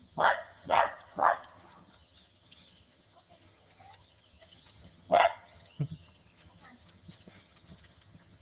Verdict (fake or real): fake